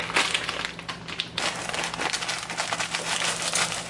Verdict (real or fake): real